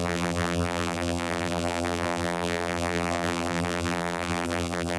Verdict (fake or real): fake